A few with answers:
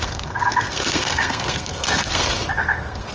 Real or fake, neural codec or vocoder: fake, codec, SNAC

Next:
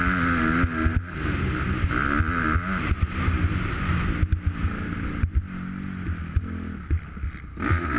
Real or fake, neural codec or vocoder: real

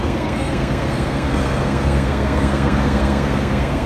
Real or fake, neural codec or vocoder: fake, codec, SNAC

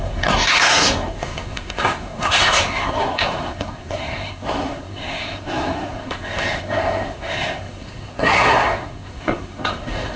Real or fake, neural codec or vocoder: fake, codec, SNAC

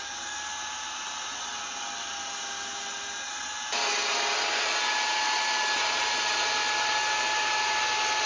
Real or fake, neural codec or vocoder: real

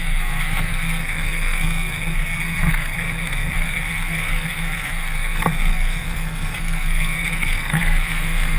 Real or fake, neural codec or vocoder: fake, codec, SNAC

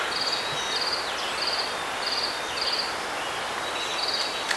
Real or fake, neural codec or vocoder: real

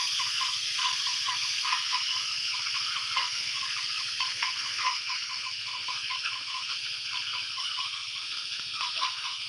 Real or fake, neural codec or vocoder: fake, codec, SNAC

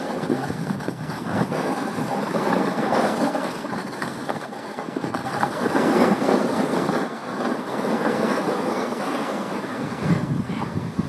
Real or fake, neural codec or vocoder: fake, codec, SNAC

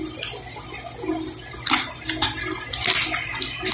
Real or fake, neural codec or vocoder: real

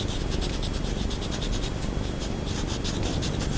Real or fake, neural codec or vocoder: real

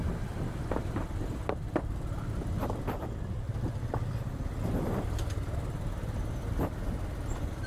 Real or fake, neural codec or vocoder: real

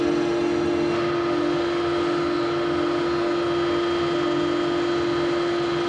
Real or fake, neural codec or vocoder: real